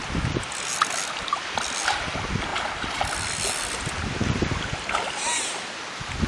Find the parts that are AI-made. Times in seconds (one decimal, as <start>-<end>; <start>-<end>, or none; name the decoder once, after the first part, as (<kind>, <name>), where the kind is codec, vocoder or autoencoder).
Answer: none